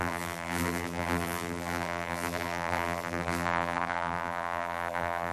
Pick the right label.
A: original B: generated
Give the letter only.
B